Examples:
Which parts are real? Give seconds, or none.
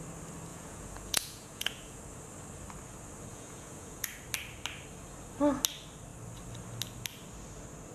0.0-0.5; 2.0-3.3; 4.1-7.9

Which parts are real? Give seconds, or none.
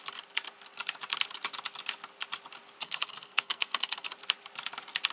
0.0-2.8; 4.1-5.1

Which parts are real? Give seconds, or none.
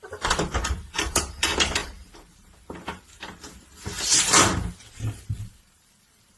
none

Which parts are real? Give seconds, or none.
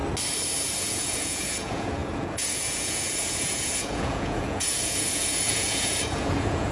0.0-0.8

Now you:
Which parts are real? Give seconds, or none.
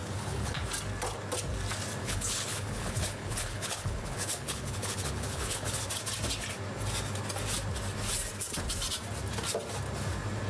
0.6-2.0; 5.8-10.5